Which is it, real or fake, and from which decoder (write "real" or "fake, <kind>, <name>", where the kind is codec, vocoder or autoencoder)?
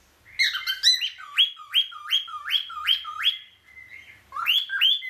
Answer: real